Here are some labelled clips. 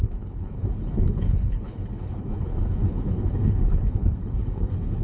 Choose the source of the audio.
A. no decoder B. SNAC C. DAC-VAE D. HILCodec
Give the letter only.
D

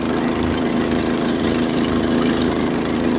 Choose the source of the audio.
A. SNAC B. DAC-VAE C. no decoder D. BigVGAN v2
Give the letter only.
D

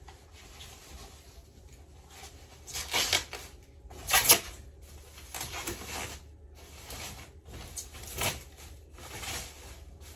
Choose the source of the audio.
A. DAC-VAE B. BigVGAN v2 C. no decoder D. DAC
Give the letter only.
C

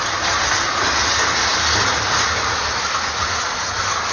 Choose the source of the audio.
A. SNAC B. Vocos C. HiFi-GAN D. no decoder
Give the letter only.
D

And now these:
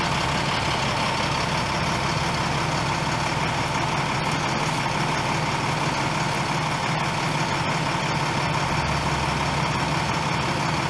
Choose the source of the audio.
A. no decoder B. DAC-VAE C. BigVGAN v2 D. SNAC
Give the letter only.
A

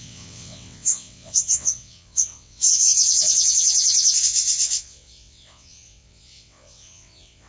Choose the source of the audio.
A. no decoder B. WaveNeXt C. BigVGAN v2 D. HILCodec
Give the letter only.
B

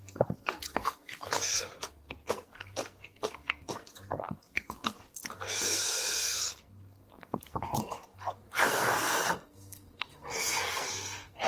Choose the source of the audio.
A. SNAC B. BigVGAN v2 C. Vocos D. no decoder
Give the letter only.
A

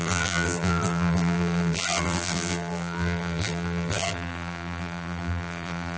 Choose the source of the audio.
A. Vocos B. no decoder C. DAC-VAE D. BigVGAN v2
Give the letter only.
D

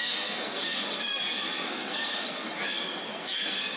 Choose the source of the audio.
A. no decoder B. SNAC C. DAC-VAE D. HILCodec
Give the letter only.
B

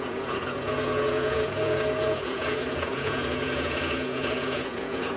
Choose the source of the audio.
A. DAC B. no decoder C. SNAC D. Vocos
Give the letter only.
D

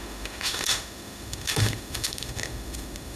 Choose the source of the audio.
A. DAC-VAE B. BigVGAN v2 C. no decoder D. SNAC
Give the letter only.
A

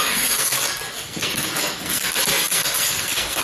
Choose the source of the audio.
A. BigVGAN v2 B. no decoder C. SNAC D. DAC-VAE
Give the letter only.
C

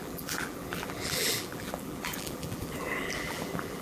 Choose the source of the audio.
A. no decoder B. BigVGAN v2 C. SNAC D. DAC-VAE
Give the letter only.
B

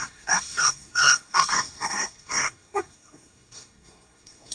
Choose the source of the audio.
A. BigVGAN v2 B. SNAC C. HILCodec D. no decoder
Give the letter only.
B